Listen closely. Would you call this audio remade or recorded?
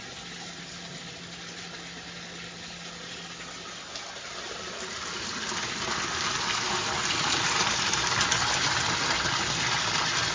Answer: recorded